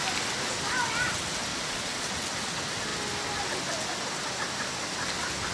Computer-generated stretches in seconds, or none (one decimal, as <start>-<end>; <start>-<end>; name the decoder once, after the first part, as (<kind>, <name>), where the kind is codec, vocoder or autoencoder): 1.5-2.1 (vocoder, Vocos)